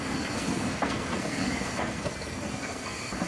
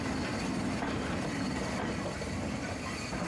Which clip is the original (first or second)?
second